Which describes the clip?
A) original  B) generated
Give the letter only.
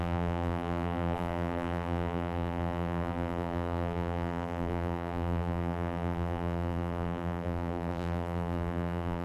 B